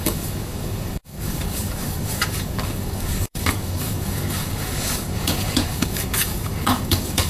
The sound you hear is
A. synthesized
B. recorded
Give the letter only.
A